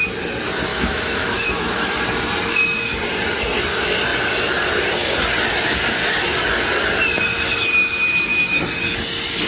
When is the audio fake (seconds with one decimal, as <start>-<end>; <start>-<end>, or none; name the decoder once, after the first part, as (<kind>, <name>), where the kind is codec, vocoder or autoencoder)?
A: 0.7-1.9 (autoencoder, DAC-VAE)